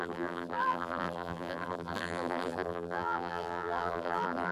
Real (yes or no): no